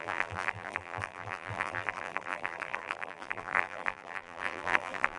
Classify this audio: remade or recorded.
remade